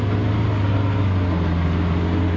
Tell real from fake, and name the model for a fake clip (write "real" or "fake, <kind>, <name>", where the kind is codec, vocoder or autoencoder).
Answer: real